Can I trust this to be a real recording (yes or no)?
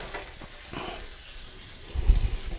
yes